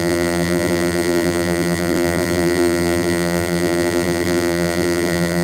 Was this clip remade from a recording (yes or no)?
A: yes